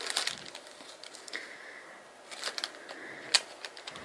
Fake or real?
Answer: real